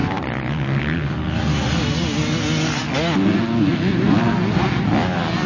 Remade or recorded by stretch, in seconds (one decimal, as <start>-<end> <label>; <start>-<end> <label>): 0.0-3.7 recorded; 3.7-4.3 remade; 4.3-5.5 recorded